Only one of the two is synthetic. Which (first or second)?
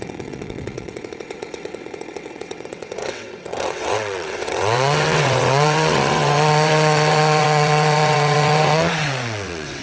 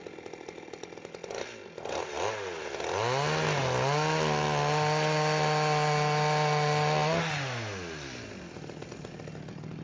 first